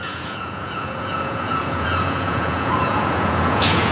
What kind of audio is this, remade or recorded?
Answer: remade